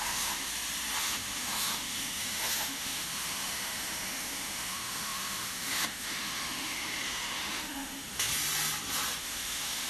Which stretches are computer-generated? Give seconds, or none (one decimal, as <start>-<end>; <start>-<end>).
0.0-0.5; 1.0-8.3; 9.2-9.9